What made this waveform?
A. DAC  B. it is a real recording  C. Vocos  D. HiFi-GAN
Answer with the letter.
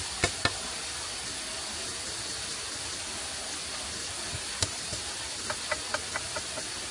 B